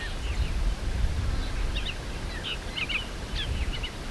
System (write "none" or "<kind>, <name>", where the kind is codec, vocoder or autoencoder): none